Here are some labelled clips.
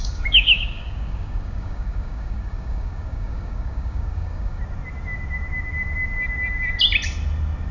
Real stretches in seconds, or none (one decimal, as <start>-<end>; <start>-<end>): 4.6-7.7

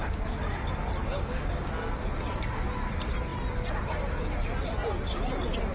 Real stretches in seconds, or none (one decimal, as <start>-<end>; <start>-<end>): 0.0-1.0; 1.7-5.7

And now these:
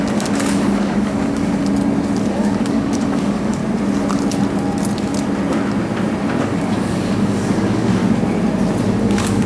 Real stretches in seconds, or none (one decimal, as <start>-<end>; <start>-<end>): 1.6-2.2; 3.6-6.4; 8.0-9.0